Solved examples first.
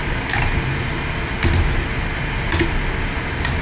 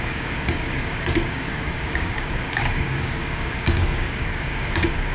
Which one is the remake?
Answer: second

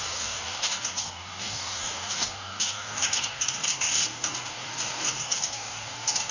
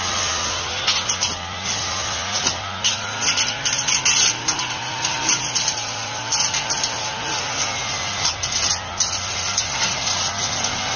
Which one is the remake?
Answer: first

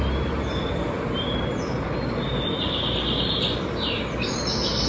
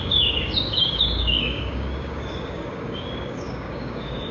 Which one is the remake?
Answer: second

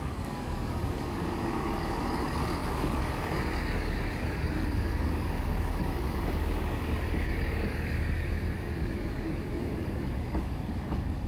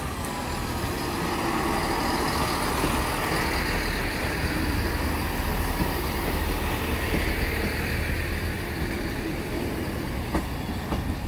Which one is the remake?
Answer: first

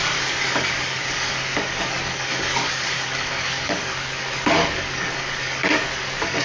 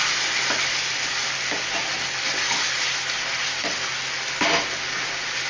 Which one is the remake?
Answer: first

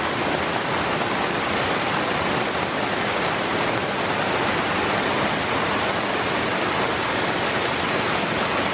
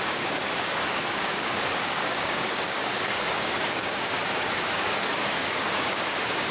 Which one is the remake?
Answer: second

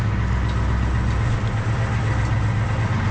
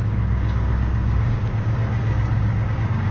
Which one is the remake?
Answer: second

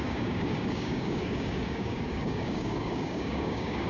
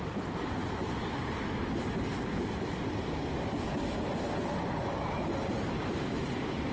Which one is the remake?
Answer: first